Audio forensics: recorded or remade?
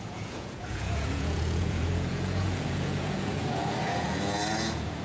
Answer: remade